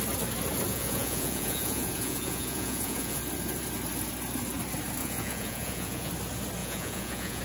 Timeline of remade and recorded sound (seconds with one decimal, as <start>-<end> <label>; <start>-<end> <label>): 0.0-0.7 recorded; 0.7-3.2 remade; 3.2-5.0 recorded; 5.0-6.1 remade; 6.1-6.6 recorded; 6.6-7.4 remade

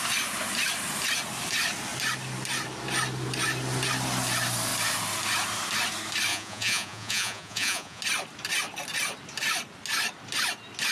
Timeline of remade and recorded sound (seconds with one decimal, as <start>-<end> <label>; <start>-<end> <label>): 0.0-6.3 recorded; 6.3-8.0 remade; 8.0-10.9 recorded

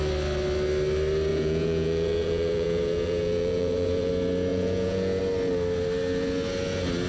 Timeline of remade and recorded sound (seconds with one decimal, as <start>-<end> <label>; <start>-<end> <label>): 0.0-1.3 recorded; 1.3-4.1 remade; 4.1-4.5 recorded; 4.5-5.2 remade; 5.2-7.1 recorded

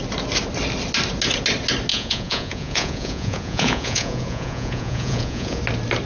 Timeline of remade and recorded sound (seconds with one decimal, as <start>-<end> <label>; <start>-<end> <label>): 0.0-1.9 recorded; 1.9-5.6 remade; 5.6-6.1 recorded

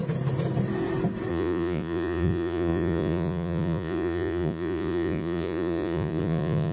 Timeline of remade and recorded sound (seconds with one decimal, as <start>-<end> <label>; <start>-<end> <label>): 0.0-1.3 recorded; 1.3-6.7 remade

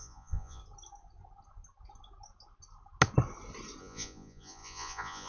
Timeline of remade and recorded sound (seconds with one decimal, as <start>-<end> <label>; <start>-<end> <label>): 0.0-0.6 remade; 0.6-3.8 recorded; 3.8-5.3 remade

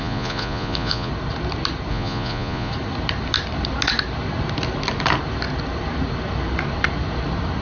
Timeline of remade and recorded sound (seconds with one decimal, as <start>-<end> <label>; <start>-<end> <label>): 0.0-1.1 remade; 1.1-1.9 recorded; 1.9-2.7 remade; 2.7-7.6 recorded

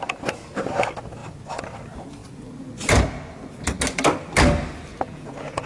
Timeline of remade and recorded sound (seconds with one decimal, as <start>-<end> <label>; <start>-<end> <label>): 0.0-4.9 recorded; 4.9-5.7 remade